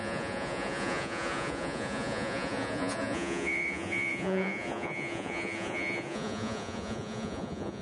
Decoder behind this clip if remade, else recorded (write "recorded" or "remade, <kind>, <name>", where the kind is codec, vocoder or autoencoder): remade, vocoder, Vocos